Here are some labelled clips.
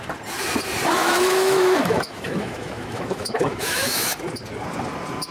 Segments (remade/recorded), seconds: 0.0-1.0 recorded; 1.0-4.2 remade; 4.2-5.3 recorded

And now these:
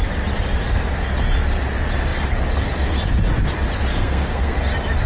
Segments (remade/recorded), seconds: 0.0-3.9 recorded; 3.9-4.6 remade; 4.6-5.1 recorded

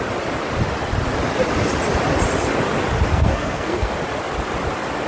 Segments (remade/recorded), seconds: 0.0-3.1 recorded; 3.1-3.9 remade; 3.9-5.1 recorded